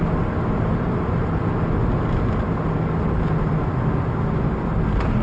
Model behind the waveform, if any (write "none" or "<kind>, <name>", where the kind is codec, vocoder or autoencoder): none